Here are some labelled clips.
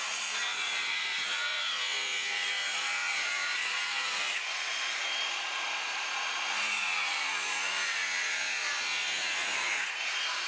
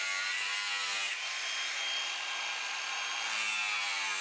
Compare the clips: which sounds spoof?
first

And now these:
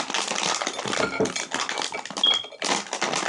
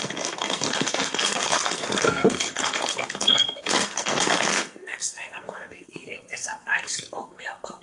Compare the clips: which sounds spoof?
second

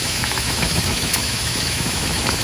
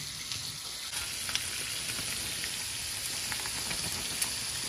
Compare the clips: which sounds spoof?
first